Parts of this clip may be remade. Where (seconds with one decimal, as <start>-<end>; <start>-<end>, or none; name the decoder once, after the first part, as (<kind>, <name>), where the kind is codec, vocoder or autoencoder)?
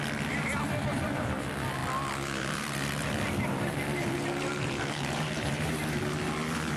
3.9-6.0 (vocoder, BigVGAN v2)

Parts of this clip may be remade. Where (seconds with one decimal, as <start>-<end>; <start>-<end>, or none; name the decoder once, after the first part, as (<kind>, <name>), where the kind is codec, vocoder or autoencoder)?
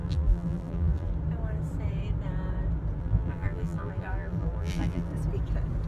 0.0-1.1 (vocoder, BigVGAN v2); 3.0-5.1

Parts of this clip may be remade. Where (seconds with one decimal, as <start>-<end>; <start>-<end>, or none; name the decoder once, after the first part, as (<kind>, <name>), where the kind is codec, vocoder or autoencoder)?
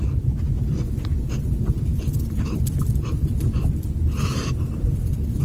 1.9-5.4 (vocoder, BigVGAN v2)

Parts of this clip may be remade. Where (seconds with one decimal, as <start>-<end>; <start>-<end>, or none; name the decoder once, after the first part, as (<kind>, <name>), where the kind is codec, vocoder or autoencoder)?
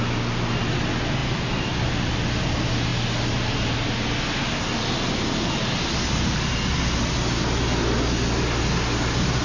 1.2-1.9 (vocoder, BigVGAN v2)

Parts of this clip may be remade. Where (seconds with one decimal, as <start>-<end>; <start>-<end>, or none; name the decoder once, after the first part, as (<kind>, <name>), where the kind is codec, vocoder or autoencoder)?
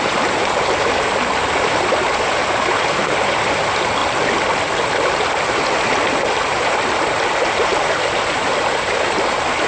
0.0-4.0 (vocoder, BigVGAN v2); 5.1-9.7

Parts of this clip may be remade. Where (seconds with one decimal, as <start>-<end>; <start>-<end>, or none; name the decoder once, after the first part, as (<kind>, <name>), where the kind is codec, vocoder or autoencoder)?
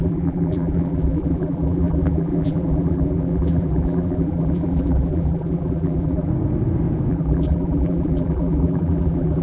0.0-6.3 (vocoder, BigVGAN v2); 7.1-9.4